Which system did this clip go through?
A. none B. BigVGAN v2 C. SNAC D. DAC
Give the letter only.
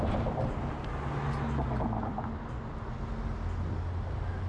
A